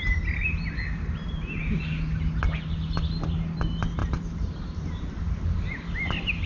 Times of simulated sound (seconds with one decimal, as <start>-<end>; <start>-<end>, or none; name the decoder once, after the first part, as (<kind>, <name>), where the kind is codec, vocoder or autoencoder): 4.0-4.9 (vocoder, BigVGAN v2)